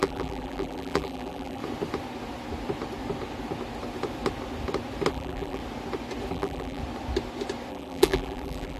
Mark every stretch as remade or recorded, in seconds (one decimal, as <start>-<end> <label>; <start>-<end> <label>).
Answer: 0.0-1.6 remade; 1.6-5.1 recorded; 5.1-5.6 remade; 5.6-6.3 recorded; 6.3-6.8 remade; 6.8-7.7 recorded; 7.7-8.8 remade